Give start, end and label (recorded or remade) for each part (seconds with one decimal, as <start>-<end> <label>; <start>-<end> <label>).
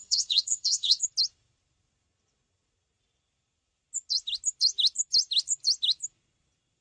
0.0-1.0 remade; 1.0-6.8 recorded